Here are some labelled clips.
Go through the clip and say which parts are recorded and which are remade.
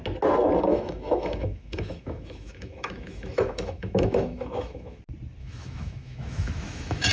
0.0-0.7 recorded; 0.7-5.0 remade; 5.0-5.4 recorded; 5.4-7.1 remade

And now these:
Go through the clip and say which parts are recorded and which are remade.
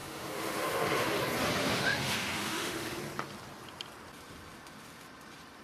0.0-1.2 remade; 1.2-1.6 recorded; 1.6-3.0 remade; 3.0-5.6 recorded